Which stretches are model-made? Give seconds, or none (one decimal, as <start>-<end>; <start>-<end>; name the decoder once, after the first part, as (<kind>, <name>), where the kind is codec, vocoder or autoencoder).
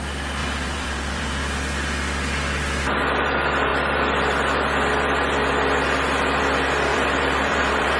0.4-1.4 (vocoder, BigVGAN v2); 6.9-8.0